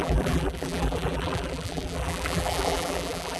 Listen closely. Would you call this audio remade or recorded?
remade